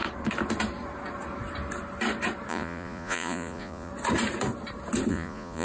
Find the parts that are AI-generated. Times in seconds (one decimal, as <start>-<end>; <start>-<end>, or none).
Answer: 2.5-3.9; 5.1-5.6